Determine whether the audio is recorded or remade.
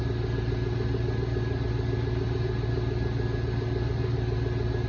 recorded